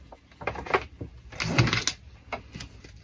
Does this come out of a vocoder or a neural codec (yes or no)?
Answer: no